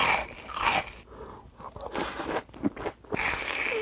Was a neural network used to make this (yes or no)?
no